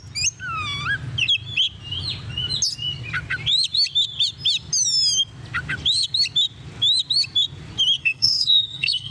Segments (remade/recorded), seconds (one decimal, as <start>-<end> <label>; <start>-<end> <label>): 0.0-8.0 recorded; 8.0-9.1 remade